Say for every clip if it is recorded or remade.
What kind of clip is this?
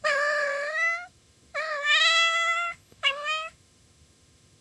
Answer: remade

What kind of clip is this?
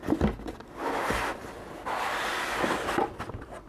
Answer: recorded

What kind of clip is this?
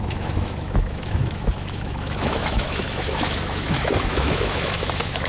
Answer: remade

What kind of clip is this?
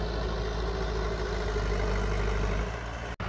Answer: recorded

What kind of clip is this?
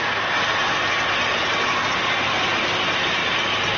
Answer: recorded